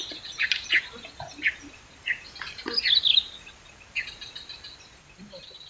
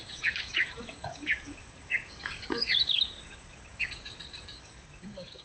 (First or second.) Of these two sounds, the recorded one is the first